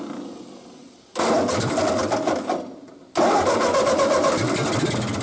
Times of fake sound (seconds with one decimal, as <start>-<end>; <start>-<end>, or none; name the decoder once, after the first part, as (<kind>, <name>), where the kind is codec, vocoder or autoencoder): none